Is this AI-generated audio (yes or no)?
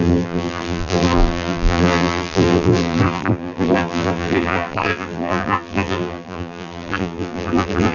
yes